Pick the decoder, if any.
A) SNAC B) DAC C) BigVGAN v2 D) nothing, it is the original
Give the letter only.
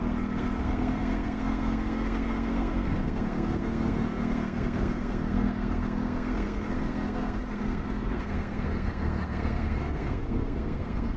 A